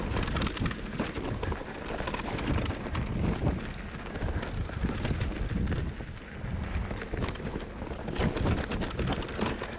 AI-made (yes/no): no